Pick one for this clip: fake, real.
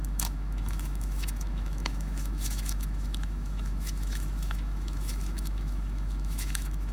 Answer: fake